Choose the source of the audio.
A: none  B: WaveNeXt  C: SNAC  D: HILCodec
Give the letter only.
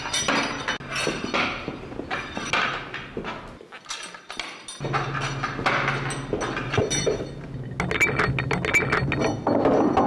A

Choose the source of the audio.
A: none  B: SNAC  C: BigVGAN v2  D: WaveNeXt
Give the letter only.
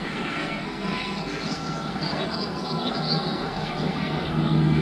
B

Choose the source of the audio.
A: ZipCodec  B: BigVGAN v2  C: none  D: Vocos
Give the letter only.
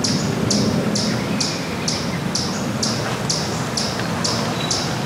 C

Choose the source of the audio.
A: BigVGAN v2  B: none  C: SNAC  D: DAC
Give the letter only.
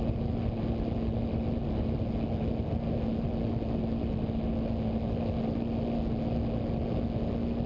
B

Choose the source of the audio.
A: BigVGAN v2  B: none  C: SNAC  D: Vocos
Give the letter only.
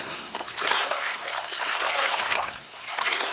C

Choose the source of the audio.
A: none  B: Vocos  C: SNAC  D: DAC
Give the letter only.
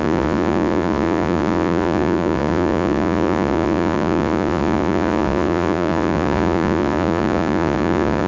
B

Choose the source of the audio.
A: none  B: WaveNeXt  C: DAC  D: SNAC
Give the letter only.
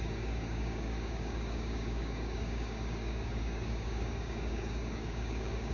C